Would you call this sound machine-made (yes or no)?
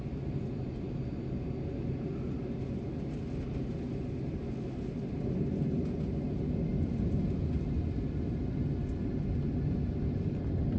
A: no